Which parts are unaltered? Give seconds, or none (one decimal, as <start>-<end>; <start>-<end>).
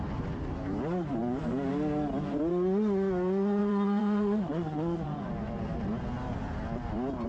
0.0-1.2; 1.7-3.6; 5.3-7.3